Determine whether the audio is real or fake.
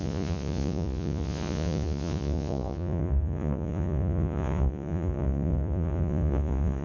fake